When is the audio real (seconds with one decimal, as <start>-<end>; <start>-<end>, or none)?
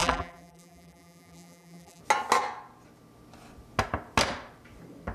2.0-5.1